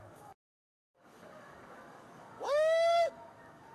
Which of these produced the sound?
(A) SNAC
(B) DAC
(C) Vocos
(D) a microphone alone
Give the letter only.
B